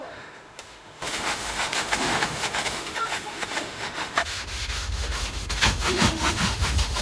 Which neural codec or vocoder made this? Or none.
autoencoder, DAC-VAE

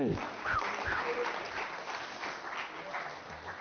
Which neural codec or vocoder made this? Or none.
none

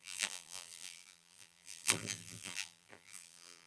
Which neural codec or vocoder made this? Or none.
vocoder, BigVGAN v2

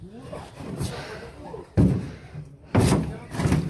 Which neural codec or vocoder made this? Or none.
vocoder, BigVGAN v2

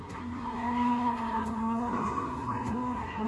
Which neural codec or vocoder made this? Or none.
codec, SNAC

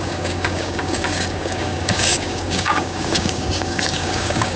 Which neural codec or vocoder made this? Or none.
codec, DAC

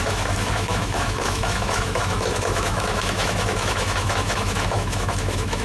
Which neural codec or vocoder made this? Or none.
autoencoder, DAC-VAE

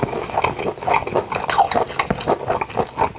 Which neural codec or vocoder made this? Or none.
none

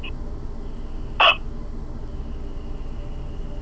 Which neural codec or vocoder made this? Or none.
none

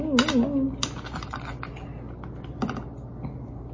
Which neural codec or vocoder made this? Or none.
none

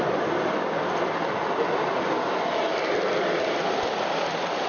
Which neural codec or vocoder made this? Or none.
vocoder, BigVGAN v2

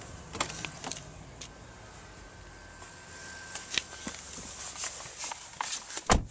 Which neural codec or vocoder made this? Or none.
none